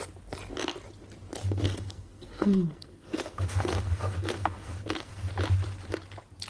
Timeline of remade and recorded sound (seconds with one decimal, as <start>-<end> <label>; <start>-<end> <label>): 0.0-1.4 recorded; 1.4-5.3 remade; 5.3-6.5 recorded